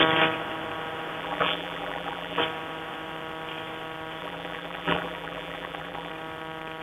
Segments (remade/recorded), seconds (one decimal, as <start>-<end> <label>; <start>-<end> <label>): 0.0-1.2 recorded; 1.2-2.4 remade; 2.4-4.2 recorded; 4.2-6.1 remade; 6.1-6.8 recorded

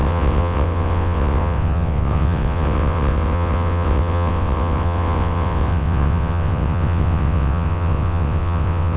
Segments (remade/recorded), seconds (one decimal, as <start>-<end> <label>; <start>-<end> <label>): 0.0-9.0 remade

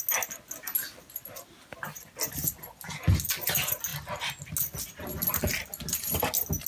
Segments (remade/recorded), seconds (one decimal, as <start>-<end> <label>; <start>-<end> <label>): 0.0-6.7 recorded

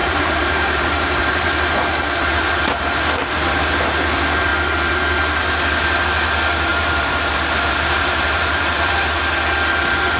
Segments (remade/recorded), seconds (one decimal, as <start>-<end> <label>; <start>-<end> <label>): 0.0-3.3 remade; 3.3-6.7 recorded; 6.7-8.9 remade; 8.9-10.2 recorded

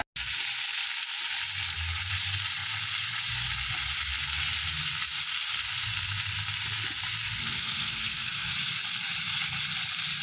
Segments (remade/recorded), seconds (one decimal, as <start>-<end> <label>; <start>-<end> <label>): 0.0-7.4 recorded; 7.4-8.5 remade; 8.5-10.2 recorded

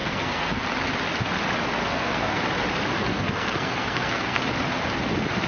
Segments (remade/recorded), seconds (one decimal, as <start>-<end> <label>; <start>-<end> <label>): 0.0-0.6 remade; 0.6-1.8 recorded; 1.8-2.4 remade; 2.4-3.0 recorded; 3.0-4.4 remade; 4.4-5.5 recorded

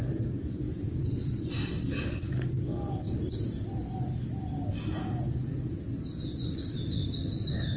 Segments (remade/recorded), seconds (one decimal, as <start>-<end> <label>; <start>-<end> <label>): 0.0-3.8 remade; 3.8-5.8 recorded; 5.8-7.8 remade